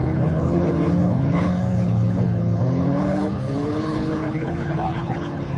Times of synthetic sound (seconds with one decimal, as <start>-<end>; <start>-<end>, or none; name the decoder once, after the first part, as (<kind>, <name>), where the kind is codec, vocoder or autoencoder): 0.0-5.6 (codec, HILCodec)